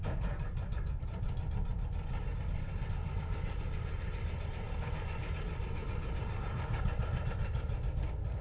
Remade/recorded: recorded